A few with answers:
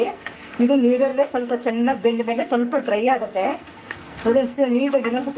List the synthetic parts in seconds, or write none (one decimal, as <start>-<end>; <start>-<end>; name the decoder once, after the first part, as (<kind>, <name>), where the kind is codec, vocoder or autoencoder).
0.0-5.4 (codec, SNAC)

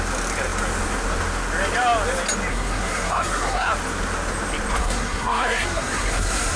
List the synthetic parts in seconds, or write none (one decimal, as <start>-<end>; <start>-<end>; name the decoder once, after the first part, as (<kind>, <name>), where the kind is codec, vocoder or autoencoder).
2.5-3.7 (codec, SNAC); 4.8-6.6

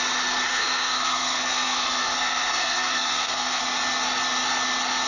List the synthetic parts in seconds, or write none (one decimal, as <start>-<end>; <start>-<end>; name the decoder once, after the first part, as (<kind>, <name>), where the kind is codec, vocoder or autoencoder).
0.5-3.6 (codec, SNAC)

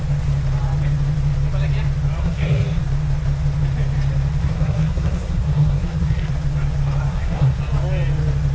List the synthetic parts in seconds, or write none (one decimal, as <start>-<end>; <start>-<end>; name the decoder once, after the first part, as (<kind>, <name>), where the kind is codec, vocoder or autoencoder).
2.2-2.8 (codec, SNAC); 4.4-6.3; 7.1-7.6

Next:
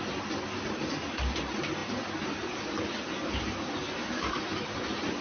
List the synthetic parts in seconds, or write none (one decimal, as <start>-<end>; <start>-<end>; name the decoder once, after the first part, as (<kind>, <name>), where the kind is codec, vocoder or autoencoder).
none

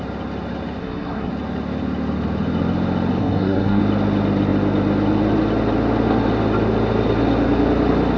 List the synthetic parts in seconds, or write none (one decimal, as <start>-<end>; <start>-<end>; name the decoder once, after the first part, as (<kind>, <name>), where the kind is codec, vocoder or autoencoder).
0.8-1.3 (codec, SNAC); 3.2-3.8

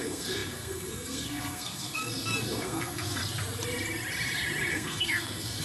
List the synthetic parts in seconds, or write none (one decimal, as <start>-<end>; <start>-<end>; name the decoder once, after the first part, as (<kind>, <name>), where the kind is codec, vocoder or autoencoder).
0.0-3.2 (codec, SNAC); 4.7-5.6

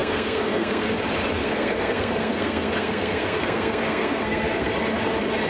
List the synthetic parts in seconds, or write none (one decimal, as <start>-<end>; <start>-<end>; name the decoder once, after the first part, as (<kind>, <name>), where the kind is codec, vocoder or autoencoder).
0.0-0.9 (codec, SNAC); 1.4-4.7